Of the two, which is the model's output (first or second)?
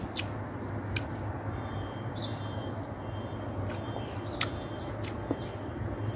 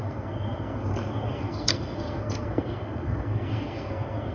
second